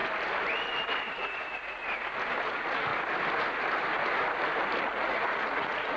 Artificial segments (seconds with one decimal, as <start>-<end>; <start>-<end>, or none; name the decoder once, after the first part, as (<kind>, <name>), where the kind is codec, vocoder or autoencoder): 1.1-1.8 (vocoder, Vocos); 2.4-2.9; 4.8-6.0